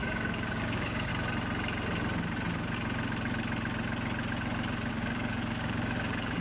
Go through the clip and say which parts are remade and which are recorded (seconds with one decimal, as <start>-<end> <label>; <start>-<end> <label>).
0.0-1.1 remade; 1.1-4.9 recorded; 4.9-6.4 remade